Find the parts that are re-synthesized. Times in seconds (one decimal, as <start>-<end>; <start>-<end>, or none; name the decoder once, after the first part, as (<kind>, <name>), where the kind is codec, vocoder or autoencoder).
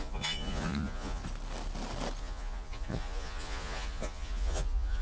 0.0-1.2 (vocoder, Vocos); 2.2-5.0